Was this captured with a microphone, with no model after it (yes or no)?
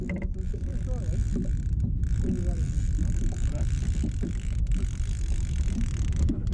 no